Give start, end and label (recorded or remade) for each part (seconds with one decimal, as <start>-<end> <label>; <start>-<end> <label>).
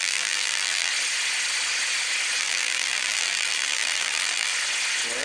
0.0-0.9 remade; 0.9-2.4 recorded; 2.4-4.5 remade; 4.5-5.2 recorded